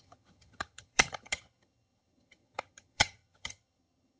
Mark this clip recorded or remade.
remade